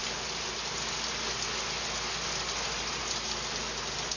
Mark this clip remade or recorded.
recorded